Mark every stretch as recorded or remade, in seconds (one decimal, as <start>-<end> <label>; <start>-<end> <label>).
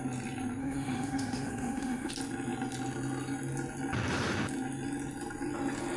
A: 0.0-0.6 recorded; 0.6-2.1 remade; 2.1-6.0 recorded